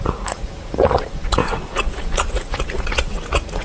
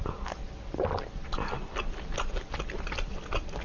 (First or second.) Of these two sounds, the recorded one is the second